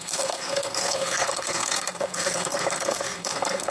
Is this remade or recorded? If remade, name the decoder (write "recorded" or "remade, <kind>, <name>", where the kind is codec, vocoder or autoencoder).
remade, codec, SNAC